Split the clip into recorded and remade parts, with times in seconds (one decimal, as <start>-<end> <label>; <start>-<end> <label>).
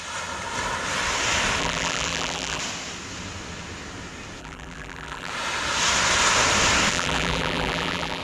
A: 0.0-1.6 recorded; 1.6-2.6 remade; 2.6-4.4 recorded; 4.4-5.3 remade; 5.3-6.9 recorded; 6.9-8.2 remade